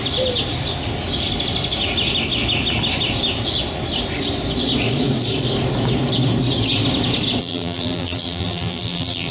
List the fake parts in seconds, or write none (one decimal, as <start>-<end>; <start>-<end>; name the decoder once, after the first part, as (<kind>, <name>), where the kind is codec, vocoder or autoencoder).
7.4-9.3 (vocoder, BigVGAN v2)